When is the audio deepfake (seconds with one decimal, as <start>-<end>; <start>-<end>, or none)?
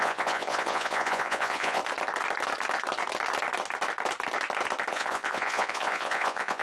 0.0-1.8; 4.9-6.6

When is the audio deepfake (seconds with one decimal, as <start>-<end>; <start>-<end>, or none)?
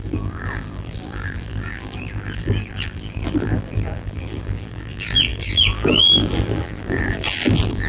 0.0-7.9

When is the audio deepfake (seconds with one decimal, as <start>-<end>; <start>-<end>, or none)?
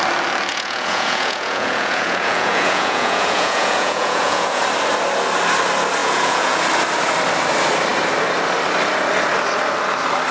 0.5-4.6; 6.0-6.6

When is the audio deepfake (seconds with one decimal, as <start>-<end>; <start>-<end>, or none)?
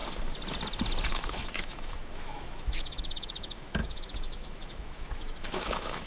1.1-6.1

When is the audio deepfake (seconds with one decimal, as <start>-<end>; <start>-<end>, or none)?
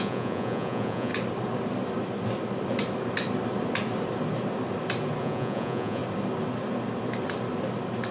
0.0-1.1; 5.2-6.0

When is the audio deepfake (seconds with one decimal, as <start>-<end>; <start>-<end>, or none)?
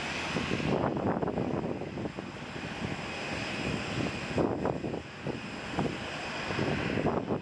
none